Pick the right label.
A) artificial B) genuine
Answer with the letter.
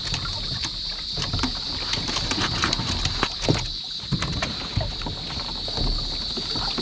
B